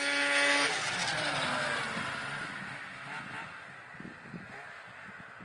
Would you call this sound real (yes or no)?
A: yes